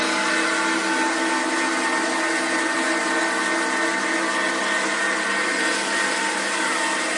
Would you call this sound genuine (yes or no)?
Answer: yes